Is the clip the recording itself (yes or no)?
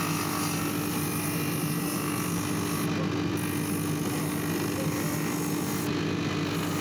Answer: yes